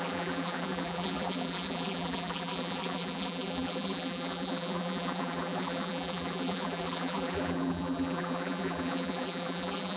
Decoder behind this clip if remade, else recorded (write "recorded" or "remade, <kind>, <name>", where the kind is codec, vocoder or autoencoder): remade, vocoder, BigVGAN v2